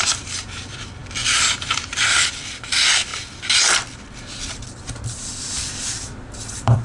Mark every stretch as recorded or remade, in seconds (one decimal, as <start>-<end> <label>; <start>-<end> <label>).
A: 0.0-3.1 remade; 3.1-5.0 recorded; 5.0-6.8 remade